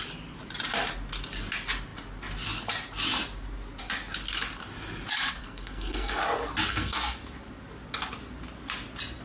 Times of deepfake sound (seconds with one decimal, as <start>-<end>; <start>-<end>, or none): 5.4-6.2; 6.7-7.2